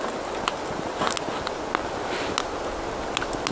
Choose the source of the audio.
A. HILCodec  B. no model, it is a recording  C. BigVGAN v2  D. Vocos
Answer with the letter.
B